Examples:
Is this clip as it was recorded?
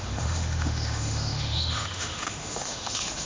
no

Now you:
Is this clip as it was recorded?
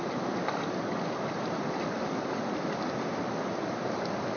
yes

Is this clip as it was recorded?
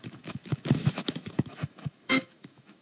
no